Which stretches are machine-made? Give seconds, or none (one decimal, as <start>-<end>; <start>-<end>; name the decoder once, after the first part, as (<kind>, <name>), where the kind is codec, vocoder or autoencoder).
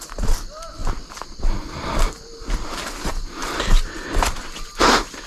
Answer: 0.8-2.9 (vocoder, BigVGAN v2)